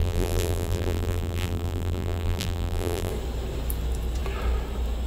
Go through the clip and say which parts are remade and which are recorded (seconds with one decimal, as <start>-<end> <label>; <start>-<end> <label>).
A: 0.0-3.1 remade; 3.1-5.1 recorded